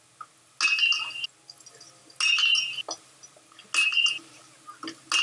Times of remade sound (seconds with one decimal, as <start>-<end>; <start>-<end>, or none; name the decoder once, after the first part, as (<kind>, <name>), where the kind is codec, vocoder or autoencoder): none